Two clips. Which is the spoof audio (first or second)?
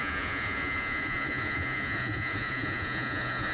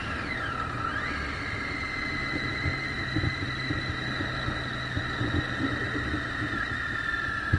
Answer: first